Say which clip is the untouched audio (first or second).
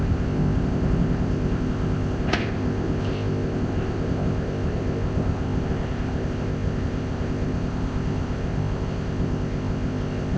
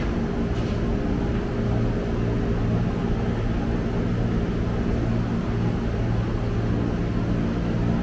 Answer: second